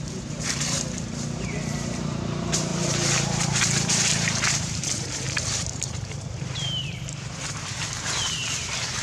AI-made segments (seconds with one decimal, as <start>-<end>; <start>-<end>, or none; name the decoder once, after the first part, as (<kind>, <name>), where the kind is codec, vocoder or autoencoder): 0.0-9.0 (vocoder, BigVGAN v2)